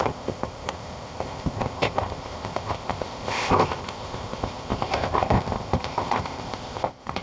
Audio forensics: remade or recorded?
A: remade